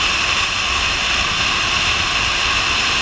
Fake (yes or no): no